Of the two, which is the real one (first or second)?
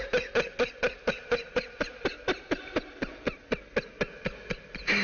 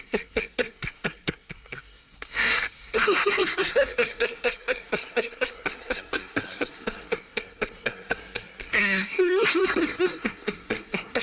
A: first